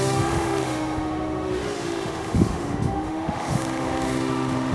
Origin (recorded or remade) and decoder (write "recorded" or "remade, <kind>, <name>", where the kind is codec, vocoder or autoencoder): remade, autoencoder, DAC-VAE